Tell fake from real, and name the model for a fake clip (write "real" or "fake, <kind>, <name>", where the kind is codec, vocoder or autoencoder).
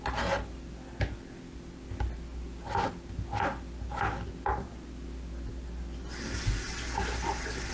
real